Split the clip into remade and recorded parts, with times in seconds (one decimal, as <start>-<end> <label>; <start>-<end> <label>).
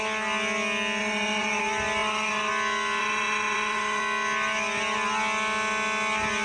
0.0-1.0 recorded; 1.0-1.6 remade; 1.6-2.0 recorded; 2.0-2.5 remade; 2.5-3.0 recorded; 3.0-4.0 remade; 4.0-6.4 recorded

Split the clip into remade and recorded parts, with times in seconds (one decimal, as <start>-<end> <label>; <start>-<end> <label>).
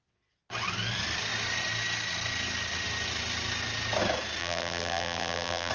0.0-4.4 recorded; 4.4-5.7 remade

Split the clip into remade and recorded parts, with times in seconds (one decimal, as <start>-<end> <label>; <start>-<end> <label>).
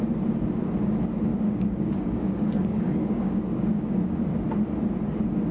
0.0-1.3 recorded; 1.3-4.2 remade; 4.2-5.5 recorded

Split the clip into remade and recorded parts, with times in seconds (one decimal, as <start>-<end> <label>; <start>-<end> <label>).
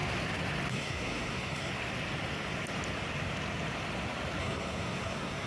0.0-0.7 recorded; 0.7-1.7 remade; 1.7-4.4 recorded; 4.4-5.5 remade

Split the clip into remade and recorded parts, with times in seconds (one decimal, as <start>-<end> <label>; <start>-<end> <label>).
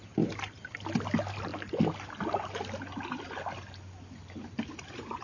0.0-5.2 recorded